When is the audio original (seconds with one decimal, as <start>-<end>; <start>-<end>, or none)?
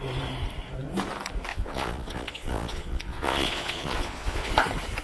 0.0-1.5; 4.5-5.0